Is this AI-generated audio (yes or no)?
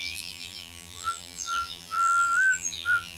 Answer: yes